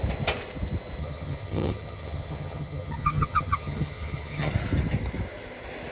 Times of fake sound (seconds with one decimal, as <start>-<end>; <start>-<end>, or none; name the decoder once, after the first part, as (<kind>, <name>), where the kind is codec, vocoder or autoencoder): 1.0-4.5 (vocoder, HiFi-GAN)